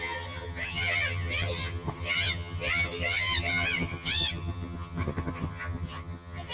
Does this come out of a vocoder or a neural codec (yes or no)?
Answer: yes